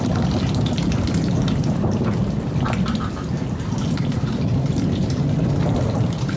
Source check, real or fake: real